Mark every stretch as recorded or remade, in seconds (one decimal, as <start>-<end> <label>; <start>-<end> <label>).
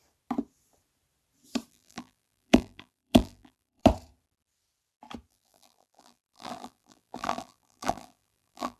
0.0-1.7 recorded; 1.7-3.8 remade; 3.8-5.3 recorded; 5.3-8.8 remade